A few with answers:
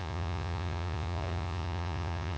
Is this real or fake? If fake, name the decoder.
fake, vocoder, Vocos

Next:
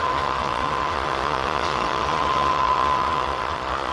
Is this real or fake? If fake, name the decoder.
fake, vocoder, Vocos